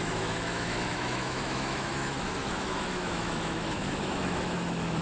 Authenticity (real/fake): fake